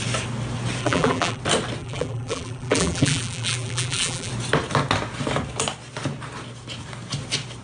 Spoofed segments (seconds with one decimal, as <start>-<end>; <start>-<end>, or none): 0.8-1.4; 1.8-4.3